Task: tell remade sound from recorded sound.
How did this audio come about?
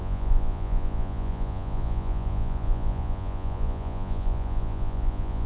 remade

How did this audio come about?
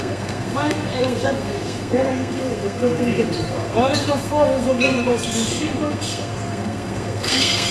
remade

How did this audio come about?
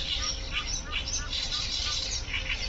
recorded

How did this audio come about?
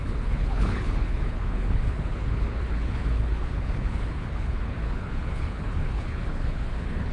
remade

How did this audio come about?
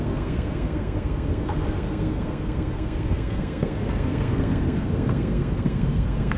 remade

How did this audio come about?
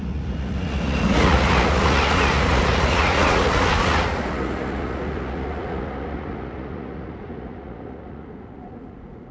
remade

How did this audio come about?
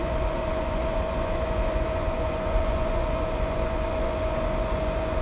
remade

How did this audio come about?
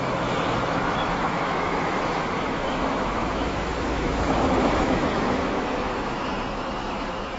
remade